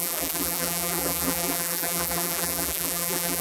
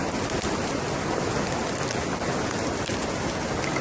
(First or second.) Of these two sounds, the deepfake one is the first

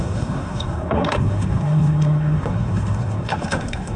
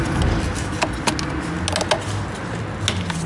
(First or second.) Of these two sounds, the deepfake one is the first